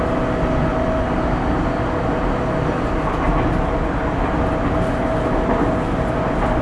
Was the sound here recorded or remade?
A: recorded